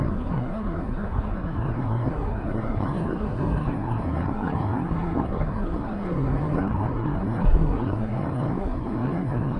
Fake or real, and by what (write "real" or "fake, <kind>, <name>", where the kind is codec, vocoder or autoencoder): fake, codec, SNAC